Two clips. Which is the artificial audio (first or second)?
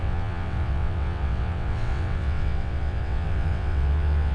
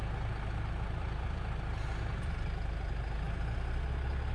first